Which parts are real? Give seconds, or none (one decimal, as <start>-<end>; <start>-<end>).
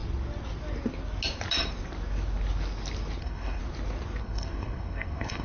0.0-3.2; 3.6-4.2